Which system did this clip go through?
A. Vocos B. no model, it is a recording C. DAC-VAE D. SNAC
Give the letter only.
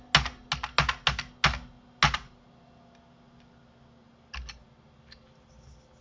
B